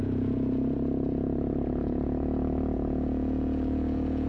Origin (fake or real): fake